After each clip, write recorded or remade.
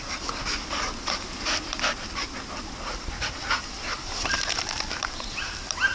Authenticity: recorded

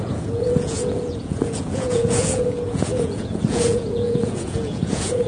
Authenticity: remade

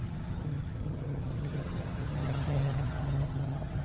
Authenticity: remade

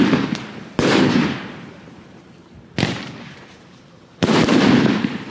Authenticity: remade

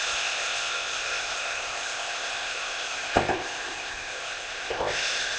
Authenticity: remade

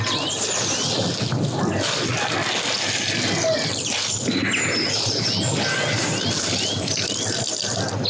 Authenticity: recorded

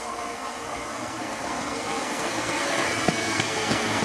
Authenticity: remade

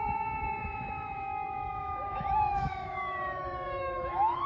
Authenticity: remade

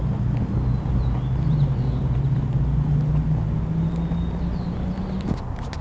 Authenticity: recorded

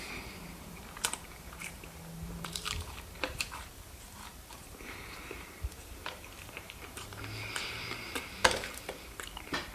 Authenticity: remade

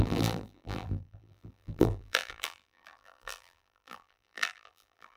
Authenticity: remade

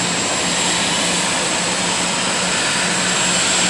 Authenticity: recorded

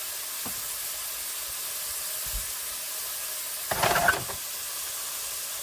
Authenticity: recorded